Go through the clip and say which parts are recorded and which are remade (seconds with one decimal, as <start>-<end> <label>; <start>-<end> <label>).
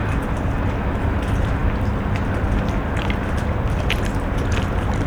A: 0.0-5.1 recorded